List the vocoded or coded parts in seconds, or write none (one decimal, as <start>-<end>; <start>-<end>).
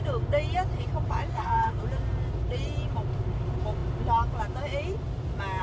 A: 1.3-1.8